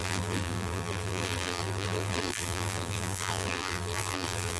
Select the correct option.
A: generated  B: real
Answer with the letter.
A